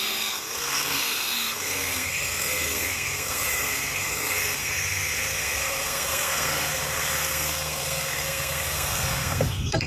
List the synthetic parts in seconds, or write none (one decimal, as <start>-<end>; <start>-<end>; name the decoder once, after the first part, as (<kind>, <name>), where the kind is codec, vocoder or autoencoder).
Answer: 0.0-9.9 (codec, SNAC)

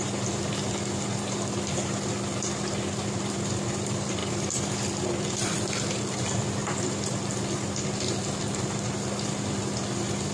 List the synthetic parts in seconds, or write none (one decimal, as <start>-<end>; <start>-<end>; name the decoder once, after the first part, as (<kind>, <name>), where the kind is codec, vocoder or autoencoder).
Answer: 0.0-4.2 (vocoder, BigVGAN v2); 5.6-6.6; 7.4-10.3

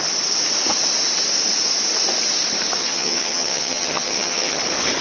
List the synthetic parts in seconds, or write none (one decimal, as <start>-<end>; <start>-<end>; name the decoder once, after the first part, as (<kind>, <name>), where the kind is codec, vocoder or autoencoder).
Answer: 2.8-4.6 (vocoder, HiFi-GAN)

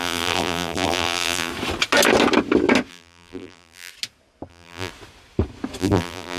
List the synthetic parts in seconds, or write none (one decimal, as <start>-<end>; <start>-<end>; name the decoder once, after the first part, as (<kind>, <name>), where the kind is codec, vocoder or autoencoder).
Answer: 0.0-1.5 (vocoder, BigVGAN v2); 2.9-3.9; 4.5-4.9; 5.8-6.4

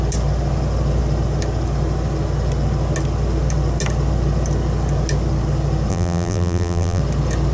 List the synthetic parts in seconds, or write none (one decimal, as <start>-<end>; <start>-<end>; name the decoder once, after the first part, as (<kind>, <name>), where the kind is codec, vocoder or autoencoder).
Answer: 5.9-7.0 (vocoder, BigVGAN v2)

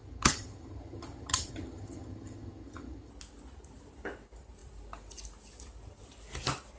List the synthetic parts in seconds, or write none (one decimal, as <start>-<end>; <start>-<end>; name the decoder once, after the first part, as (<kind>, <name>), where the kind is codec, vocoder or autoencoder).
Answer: 0.0-3.1 (vocoder, HiFi-GAN)